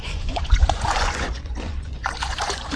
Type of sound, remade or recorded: remade